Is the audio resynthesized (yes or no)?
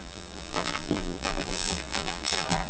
yes